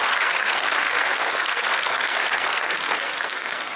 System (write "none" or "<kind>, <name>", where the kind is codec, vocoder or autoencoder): codec, SNAC